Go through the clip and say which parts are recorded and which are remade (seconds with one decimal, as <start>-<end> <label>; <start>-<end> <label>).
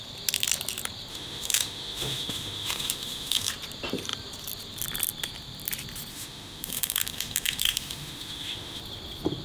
0.0-1.1 recorded; 1.1-3.5 remade; 3.5-6.1 recorded; 6.1-8.8 remade; 8.8-9.4 recorded